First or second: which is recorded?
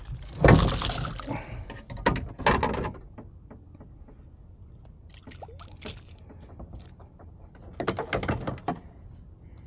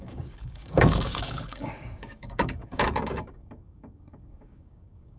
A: first